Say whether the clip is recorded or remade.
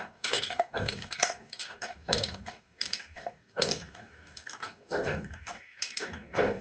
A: remade